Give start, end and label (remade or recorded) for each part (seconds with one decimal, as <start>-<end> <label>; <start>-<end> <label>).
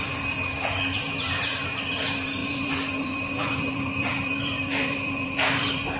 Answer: 0.0-6.0 remade